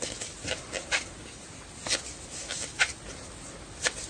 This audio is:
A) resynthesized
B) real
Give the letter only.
B